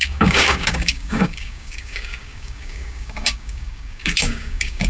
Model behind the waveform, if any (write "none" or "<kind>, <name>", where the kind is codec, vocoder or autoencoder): codec, DAC